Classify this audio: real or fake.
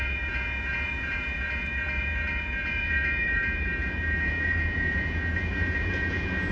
fake